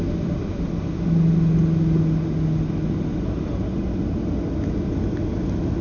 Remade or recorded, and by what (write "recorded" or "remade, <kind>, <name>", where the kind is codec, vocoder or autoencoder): recorded